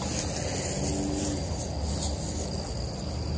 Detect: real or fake real